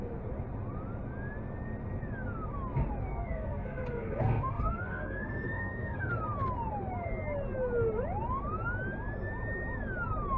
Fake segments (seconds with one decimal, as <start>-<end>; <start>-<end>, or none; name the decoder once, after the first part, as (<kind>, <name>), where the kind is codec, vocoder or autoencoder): 3.1-6.1 (codec, SNAC)